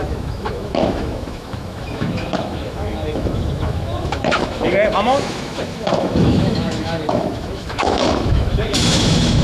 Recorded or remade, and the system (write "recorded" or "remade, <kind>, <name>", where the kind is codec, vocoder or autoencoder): remade, autoencoder, DAC-VAE